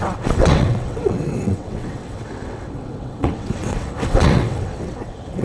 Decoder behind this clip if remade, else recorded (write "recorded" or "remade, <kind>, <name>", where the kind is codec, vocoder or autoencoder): remade, vocoder, WaveNeXt